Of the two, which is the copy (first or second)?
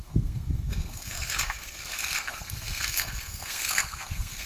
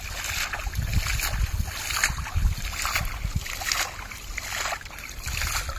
first